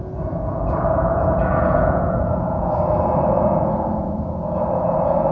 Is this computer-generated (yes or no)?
yes